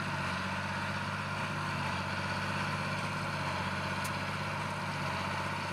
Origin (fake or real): real